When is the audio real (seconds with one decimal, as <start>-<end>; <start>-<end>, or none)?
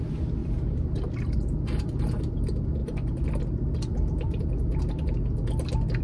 0.0-0.4; 2.4-2.8; 3.4-3.9; 4.8-6.0